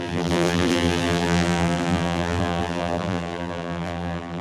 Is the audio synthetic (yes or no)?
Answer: yes